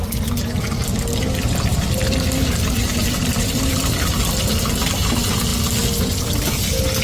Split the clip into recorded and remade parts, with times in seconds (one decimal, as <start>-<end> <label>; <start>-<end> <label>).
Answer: 0.0-1.7 recorded; 1.7-3.7 remade; 3.7-7.0 recorded